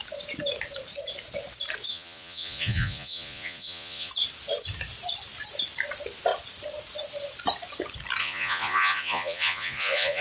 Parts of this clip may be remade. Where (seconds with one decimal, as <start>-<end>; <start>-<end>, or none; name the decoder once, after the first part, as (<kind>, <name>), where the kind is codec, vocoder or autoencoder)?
1.9-4.1 (vocoder, Vocos); 8.2-10.2